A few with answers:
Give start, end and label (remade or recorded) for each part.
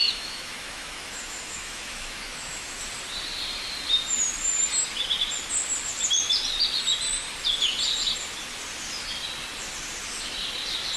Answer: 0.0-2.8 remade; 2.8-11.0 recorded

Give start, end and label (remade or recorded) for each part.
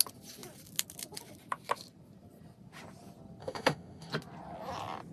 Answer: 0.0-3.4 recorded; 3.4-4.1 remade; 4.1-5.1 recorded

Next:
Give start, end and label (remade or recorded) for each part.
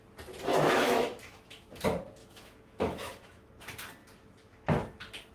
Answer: 0.0-0.5 recorded; 0.5-1.7 remade; 1.7-2.2 recorded; 2.2-3.5 remade; 3.5-5.3 recorded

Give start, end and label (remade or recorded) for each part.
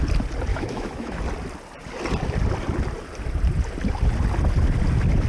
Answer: 0.0-0.5 recorded; 0.5-1.2 remade; 1.2-5.3 recorded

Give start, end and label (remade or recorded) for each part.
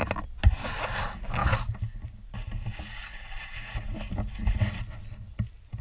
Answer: 0.0-5.8 recorded